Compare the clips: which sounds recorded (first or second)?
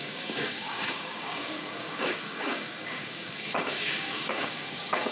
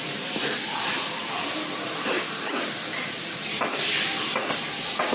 second